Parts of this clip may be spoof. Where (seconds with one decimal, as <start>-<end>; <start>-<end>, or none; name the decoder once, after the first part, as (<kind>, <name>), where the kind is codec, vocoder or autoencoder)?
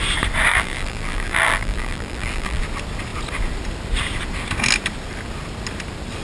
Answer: 0.5-2.6 (vocoder, BigVGAN v2)